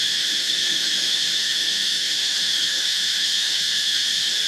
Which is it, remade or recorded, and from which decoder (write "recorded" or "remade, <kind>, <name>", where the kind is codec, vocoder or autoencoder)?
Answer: remade, autoencoder, DAC-VAE